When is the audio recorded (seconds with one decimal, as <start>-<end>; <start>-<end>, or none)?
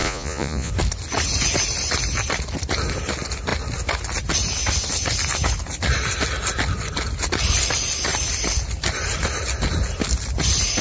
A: 0.7-10.8